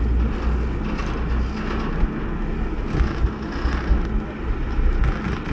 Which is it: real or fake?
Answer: real